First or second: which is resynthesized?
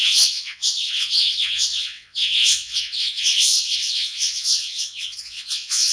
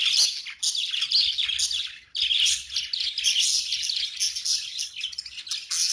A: first